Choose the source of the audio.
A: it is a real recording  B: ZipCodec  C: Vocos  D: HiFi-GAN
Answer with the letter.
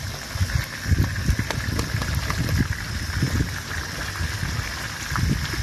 A